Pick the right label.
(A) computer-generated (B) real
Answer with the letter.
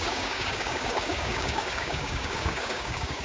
A